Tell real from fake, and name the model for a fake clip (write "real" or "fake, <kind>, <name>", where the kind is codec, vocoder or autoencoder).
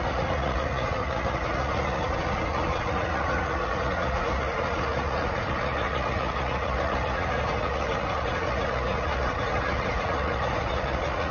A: fake, vocoder, Vocos